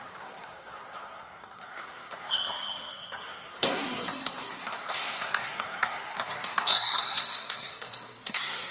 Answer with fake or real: fake